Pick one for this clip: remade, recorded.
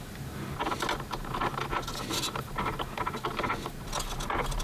recorded